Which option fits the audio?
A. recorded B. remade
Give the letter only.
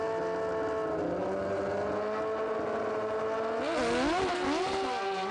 A